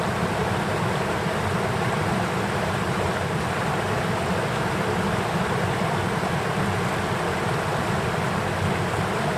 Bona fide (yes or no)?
no